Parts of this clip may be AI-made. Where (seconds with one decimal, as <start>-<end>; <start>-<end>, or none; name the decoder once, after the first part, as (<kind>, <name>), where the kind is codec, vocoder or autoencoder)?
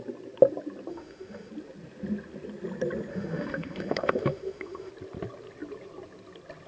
0.9-1.5 (autoencoder, DAC-VAE); 3.1-4.9